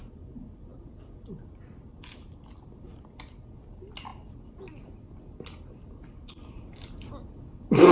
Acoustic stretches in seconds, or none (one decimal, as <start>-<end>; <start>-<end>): 0.0-7.9